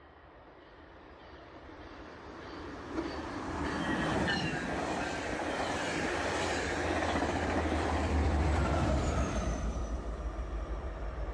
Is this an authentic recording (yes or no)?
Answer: no